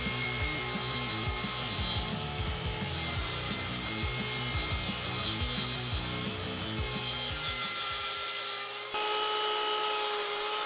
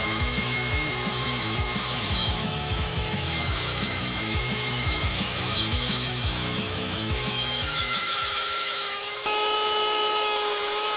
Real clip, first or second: first